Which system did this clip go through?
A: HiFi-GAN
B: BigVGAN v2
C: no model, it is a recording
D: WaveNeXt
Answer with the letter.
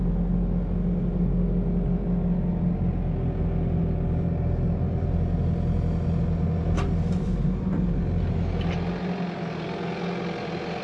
C